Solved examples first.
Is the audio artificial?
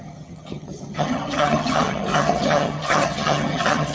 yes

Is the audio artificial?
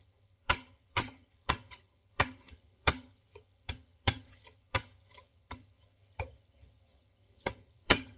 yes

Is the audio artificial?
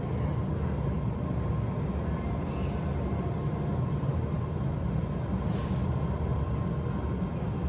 no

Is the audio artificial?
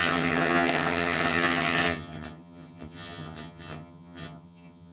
yes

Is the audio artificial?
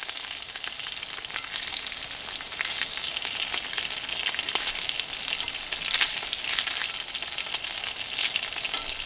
no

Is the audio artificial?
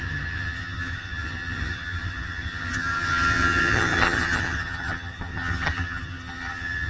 yes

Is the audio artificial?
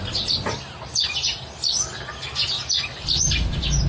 no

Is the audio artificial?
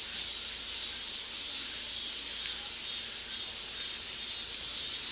no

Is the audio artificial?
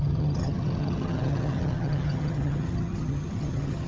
yes